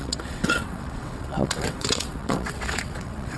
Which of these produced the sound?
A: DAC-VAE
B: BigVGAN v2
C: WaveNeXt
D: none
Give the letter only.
C